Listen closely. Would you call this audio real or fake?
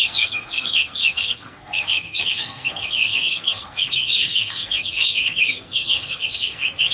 fake